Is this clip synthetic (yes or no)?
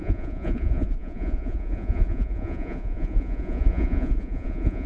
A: yes